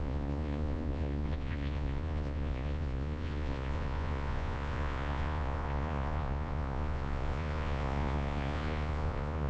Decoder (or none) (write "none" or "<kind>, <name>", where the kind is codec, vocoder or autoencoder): vocoder, Vocos